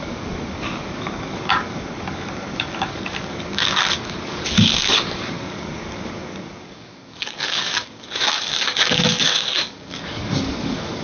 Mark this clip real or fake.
fake